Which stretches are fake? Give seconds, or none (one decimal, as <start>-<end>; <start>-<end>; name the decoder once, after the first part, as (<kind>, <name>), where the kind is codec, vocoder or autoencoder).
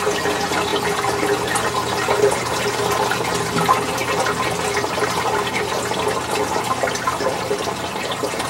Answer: none